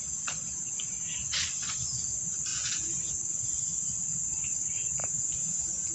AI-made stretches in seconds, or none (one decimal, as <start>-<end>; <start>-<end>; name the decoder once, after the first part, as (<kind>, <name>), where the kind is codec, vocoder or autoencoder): 2.5-3.1 (vocoder, Vocos); 5.0-5.9